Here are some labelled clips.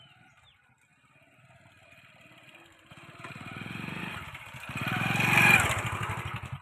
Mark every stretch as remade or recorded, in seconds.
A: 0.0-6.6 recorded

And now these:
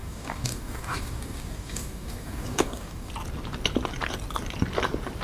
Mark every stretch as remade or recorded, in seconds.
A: 0.0-3.1 remade; 3.1-5.2 recorded

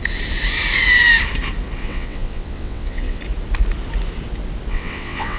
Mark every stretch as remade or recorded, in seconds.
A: 0.0-1.8 recorded; 1.8-3.2 remade; 3.2-4.7 recorded; 4.7-5.4 remade

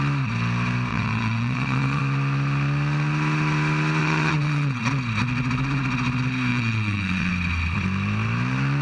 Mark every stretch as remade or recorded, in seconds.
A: 0.0-0.9 recorded; 0.9-2.0 remade; 2.0-4.0 recorded; 4.0-4.9 remade; 4.9-6.5 recorded; 6.5-7.3 remade; 7.3-8.8 recorded

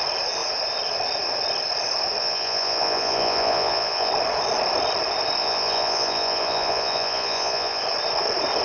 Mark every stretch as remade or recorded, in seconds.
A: 0.0-2.2 recorded; 2.2-4.1 remade; 4.1-5.4 recorded; 5.4-7.8 remade; 7.8-8.6 recorded